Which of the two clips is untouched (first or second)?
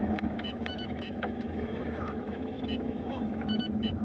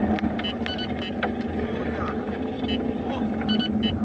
second